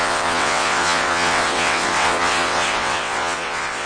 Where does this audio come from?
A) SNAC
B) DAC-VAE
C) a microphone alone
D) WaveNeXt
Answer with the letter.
D